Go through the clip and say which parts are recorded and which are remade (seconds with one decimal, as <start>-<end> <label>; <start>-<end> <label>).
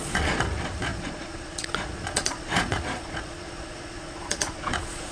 0.0-5.1 remade